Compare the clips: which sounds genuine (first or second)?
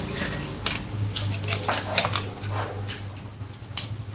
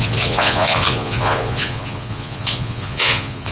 first